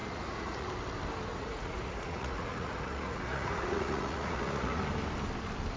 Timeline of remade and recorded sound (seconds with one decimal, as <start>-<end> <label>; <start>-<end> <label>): 0.0-0.7 remade; 0.7-1.3 recorded; 1.3-4.8 remade; 4.8-5.8 recorded